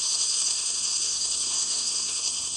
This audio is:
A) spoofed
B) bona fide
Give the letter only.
A